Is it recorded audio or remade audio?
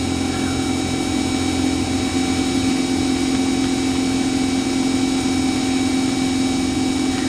recorded